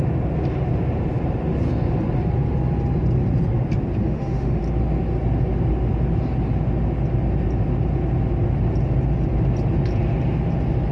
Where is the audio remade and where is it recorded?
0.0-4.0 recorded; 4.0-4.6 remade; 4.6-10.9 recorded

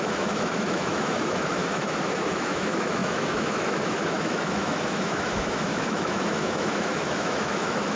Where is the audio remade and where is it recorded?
0.0-8.0 remade

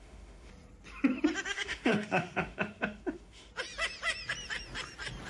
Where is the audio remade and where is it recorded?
0.0-0.5 remade; 0.5-1.5 recorded; 1.5-3.5 remade; 3.5-5.3 recorded

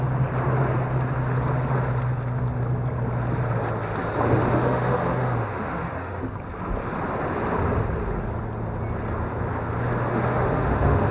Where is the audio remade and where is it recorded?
0.0-4.5 recorded; 4.5-6.2 remade; 6.2-10.1 recorded; 10.1-11.1 remade

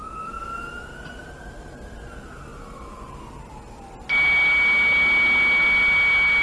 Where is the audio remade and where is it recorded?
0.0-6.4 recorded

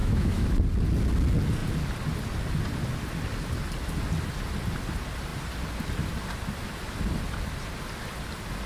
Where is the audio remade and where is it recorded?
0.0-0.6 remade; 0.6-8.7 recorded